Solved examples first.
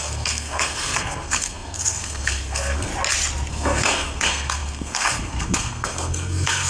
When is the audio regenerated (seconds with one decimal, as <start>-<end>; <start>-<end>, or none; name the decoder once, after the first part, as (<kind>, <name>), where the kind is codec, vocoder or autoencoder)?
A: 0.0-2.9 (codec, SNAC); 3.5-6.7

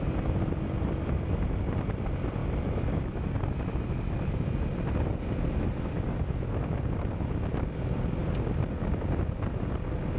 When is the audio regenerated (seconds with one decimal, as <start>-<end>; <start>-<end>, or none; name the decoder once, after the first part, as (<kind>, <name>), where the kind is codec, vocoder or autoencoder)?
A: none

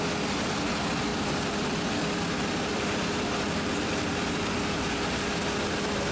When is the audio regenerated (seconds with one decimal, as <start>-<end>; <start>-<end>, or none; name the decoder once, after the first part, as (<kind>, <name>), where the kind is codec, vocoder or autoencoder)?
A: 1.1-4.8 (vocoder, BigVGAN v2)

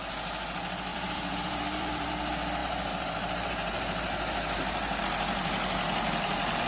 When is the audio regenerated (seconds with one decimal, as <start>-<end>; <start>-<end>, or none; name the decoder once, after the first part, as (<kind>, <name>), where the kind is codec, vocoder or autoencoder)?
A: 0.9-2.1 (vocoder, BigVGAN v2); 2.6-5.0